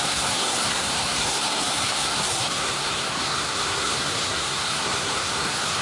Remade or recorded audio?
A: remade